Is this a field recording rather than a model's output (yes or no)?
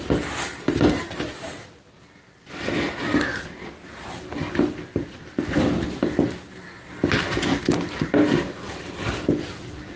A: yes